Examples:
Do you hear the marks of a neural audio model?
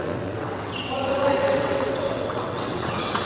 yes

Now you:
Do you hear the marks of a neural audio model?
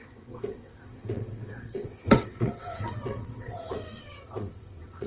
yes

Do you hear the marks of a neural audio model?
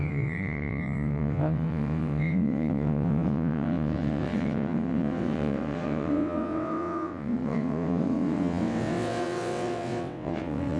yes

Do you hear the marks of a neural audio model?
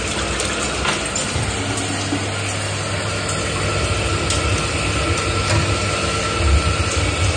no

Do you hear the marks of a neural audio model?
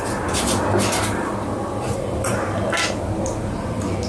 no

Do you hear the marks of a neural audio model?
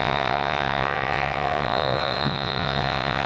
yes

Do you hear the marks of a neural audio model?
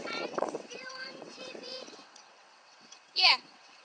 yes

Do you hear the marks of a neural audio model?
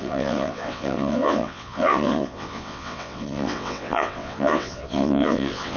yes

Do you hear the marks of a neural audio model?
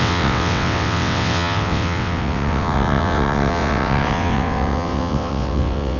yes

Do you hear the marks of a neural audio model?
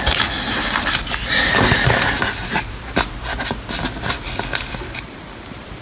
no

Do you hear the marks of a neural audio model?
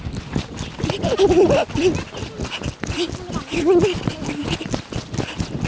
no